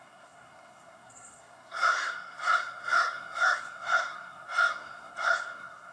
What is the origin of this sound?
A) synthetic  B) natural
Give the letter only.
A